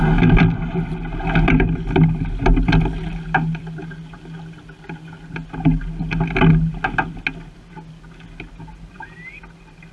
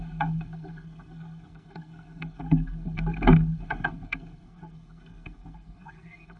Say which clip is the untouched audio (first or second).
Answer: first